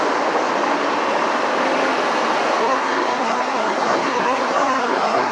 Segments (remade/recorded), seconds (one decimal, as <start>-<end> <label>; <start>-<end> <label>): 0.0-2.6 recorded; 2.6-5.3 remade

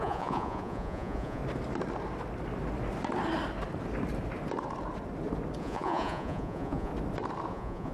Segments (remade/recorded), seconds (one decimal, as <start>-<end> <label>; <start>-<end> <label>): 0.0-1.4 remade; 1.4-5.6 recorded; 5.6-6.9 remade; 6.9-7.5 recorded; 7.5-7.9 remade

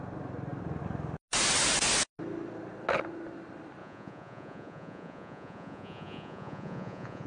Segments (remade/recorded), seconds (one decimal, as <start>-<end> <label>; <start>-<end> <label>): 0.0-3.8 recorded; 3.8-7.3 remade

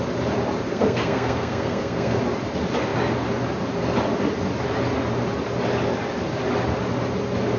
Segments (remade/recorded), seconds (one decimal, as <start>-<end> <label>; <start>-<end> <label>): 0.0-0.7 recorded; 0.7-2.2 remade; 2.2-7.6 recorded